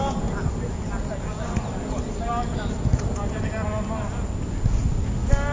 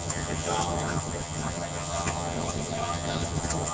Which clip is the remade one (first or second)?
second